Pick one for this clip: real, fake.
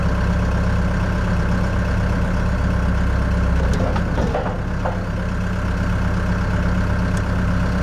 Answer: real